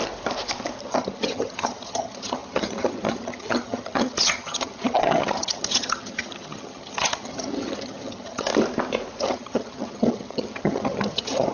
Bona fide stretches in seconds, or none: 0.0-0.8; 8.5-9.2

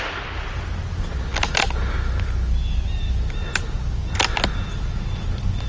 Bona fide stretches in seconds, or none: 0.0-5.7

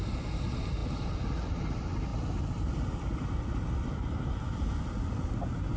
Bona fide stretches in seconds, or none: 0.0-5.8

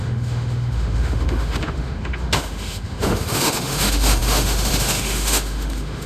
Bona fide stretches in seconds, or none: none

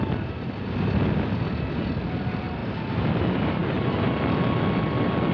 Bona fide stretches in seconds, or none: 0.0-5.3